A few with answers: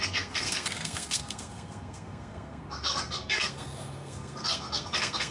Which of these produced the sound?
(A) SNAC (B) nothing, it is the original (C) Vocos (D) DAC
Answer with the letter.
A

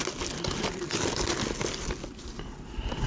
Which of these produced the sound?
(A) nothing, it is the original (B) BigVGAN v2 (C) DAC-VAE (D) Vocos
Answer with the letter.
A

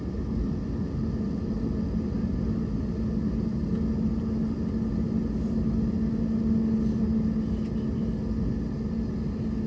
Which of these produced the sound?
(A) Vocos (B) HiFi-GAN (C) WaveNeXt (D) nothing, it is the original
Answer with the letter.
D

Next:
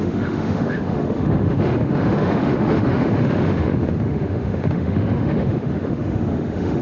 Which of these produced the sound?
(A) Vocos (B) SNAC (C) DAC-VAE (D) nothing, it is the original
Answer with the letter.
C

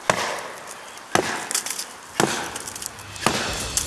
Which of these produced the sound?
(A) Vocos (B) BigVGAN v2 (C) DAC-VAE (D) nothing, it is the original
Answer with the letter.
D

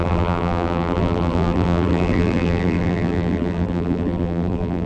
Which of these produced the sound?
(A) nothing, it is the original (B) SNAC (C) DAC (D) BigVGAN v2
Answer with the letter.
D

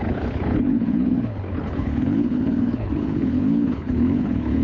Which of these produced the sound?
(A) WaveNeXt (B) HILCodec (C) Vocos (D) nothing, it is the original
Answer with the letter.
B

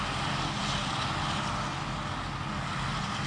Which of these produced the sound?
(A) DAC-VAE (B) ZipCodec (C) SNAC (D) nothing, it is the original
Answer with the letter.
D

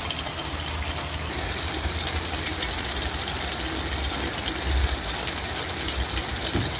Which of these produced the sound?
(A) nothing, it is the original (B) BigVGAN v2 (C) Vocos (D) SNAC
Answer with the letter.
A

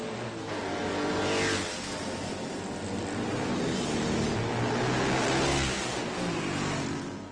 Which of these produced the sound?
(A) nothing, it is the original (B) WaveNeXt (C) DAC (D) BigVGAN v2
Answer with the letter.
A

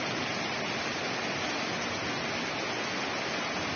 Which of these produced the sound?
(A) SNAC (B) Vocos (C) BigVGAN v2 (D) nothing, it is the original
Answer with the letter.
D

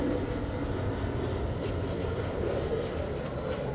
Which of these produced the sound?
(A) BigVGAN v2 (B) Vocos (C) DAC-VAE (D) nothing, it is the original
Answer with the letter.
D